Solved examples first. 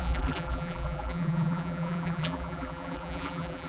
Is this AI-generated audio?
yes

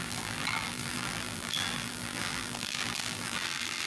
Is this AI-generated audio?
yes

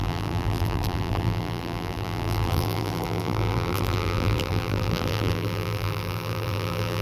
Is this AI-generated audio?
yes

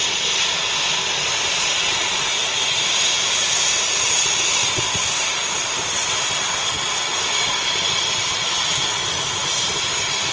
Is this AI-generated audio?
no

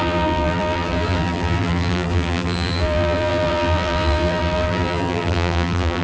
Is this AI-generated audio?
yes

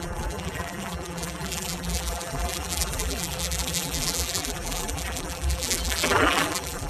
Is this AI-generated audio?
yes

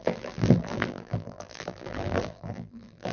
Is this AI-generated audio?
yes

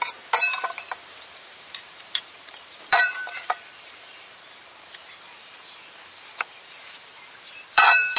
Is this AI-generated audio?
yes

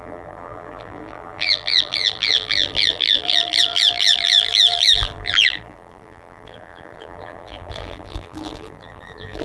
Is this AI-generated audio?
yes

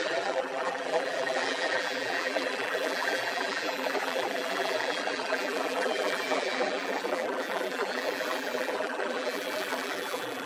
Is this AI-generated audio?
yes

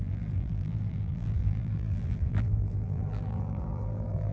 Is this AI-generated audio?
yes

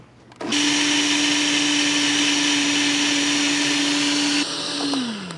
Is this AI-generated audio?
no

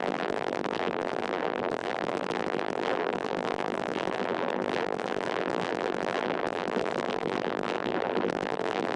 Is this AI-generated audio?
yes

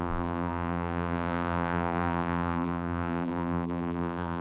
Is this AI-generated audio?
yes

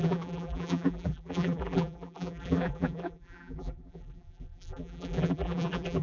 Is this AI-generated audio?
yes